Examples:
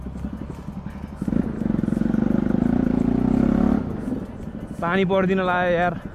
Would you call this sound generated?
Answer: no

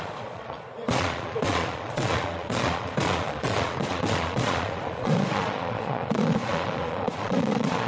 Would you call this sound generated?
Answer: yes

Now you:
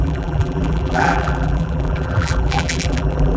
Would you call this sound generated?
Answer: yes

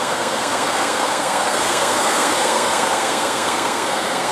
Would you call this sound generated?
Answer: yes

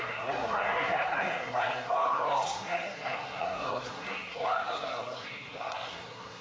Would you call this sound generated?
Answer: yes